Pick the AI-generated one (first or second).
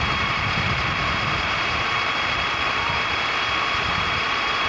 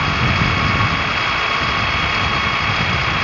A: first